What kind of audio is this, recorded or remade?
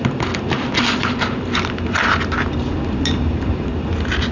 recorded